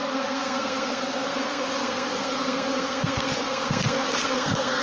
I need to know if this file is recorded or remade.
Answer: remade